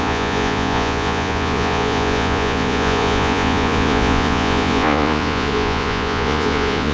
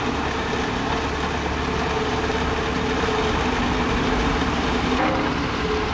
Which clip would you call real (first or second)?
second